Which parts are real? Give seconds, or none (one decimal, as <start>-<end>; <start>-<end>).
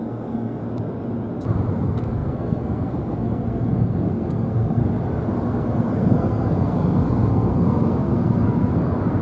0.6-1.7; 4.8-5.5